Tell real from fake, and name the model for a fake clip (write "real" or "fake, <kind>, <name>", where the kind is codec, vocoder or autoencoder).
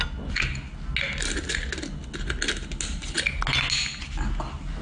real